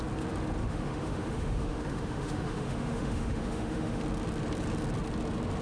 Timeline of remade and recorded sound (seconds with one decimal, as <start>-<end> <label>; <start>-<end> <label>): 0.0-0.6 recorded; 0.6-4.0 remade; 4.0-5.6 recorded